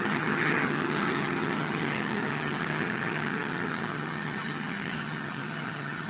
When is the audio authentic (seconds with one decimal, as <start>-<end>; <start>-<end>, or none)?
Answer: none